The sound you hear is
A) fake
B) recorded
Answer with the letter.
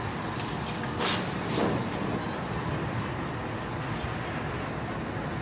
B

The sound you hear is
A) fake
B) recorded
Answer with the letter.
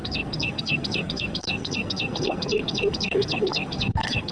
A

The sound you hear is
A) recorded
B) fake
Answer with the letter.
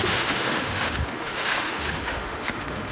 B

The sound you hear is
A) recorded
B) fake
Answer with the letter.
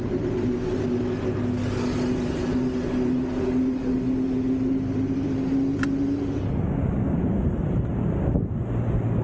A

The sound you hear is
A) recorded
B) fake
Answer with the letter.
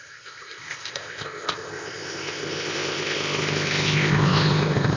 B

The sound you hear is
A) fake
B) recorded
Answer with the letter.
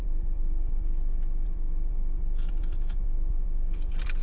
A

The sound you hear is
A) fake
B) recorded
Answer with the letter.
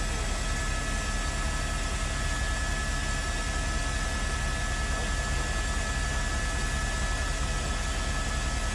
B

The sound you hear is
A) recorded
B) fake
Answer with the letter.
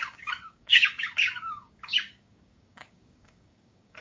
B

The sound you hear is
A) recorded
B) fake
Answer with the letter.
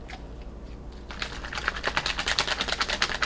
A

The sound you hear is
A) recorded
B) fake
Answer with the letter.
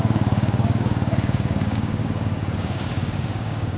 B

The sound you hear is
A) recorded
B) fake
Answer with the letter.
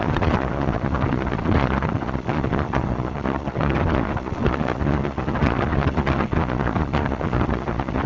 B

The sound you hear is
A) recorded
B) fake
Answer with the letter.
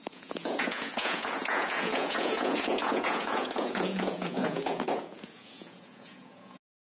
B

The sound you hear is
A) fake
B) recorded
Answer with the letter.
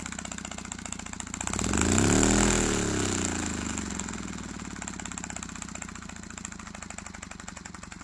B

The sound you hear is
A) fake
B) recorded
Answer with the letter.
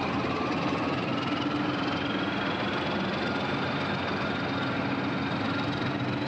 B